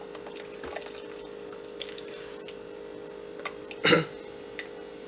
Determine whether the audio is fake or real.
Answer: real